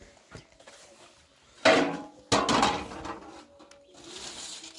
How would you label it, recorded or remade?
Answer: recorded